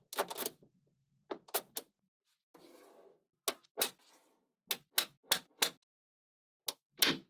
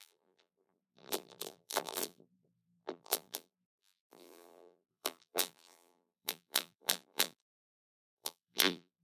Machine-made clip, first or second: second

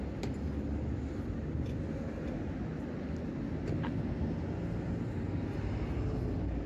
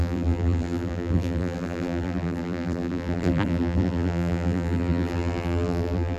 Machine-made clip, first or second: second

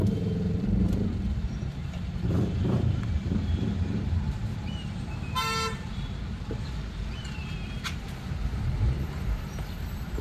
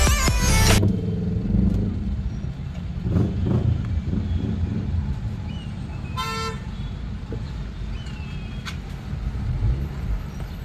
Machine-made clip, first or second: first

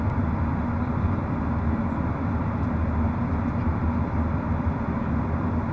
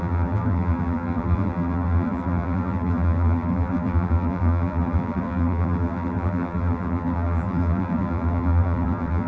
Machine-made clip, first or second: second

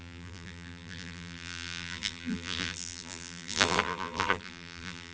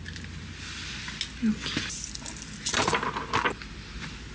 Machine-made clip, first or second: first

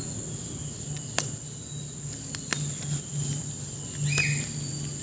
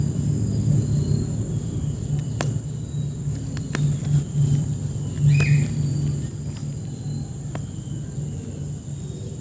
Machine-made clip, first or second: second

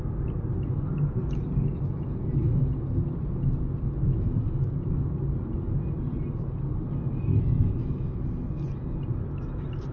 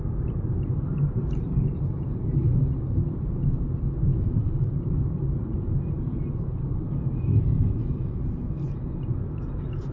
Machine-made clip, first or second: second